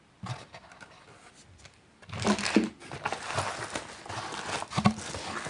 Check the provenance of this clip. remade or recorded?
recorded